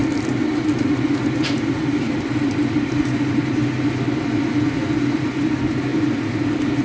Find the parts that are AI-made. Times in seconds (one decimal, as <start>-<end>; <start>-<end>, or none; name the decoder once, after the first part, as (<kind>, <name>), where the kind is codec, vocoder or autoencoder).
none